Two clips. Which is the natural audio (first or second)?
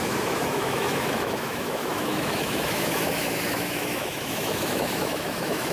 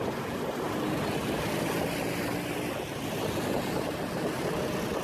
second